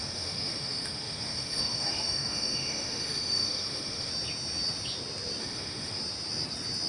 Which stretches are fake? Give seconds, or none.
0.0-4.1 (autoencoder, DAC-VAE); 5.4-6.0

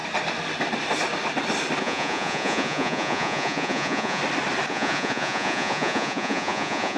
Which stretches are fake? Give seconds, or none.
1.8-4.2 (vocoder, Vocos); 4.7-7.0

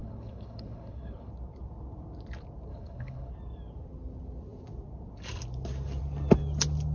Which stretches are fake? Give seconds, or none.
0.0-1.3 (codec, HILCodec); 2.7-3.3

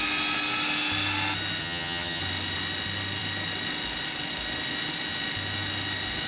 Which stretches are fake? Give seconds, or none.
1.6-2.2 (vocoder, HiFi-GAN)